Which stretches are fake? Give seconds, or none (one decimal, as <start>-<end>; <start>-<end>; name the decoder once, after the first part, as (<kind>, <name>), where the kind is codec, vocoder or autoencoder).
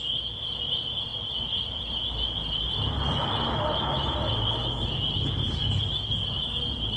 none